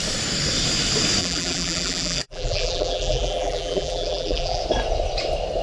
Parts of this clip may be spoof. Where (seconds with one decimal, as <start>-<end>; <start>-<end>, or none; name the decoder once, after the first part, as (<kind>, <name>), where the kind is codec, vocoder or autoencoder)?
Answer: 1.2-4.6 (vocoder, BigVGAN v2)

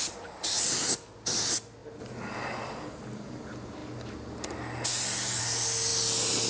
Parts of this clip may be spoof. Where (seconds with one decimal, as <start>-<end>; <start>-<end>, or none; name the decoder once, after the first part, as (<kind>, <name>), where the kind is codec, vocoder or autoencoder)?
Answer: none

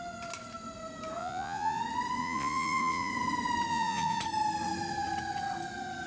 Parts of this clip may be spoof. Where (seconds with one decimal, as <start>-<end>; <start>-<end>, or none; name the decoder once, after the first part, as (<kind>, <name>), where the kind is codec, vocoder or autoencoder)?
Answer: 1.2-1.8 (vocoder, Vocos); 2.2-3.1; 3.7-4.2

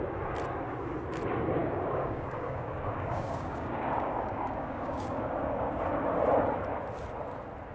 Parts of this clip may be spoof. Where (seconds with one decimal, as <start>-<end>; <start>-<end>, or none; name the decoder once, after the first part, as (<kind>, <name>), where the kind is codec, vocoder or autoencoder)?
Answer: 1.6-5.7 (codec, DAC)

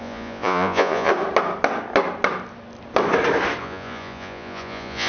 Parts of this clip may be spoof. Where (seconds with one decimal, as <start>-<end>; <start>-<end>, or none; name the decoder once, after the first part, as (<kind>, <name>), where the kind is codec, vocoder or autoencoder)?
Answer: 0.0-1.1 (vocoder, Vocos); 3.6-5.1

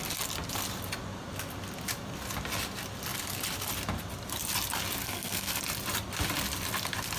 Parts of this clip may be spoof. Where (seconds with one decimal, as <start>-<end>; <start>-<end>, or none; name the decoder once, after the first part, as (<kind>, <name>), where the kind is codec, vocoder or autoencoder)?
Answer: 5.0-5.6 (codec, SNAC)